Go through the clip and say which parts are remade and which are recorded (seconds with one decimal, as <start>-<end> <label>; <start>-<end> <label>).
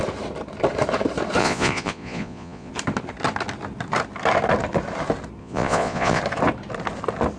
0.0-1.4 recorded; 1.4-2.7 remade; 2.7-5.4 recorded; 5.4-6.2 remade; 6.2-7.4 recorded